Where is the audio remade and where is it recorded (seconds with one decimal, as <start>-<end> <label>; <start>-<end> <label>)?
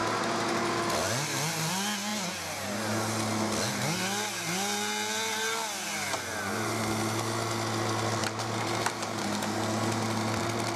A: 0.0-8.2 recorded; 8.2-9.2 remade; 9.2-10.8 recorded